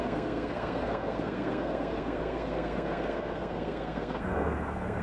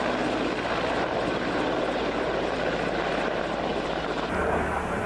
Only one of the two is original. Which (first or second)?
second